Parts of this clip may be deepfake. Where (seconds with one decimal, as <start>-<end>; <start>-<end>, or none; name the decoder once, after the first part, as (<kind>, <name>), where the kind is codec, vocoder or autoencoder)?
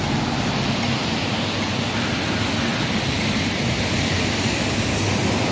2.7-3.2 (vocoder, BigVGAN v2)